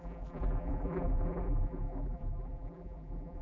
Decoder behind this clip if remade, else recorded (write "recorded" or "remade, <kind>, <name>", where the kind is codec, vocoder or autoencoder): remade, vocoder, BigVGAN v2